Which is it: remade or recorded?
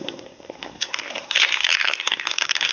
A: remade